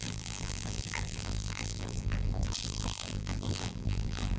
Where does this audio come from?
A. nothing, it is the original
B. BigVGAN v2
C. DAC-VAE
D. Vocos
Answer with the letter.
B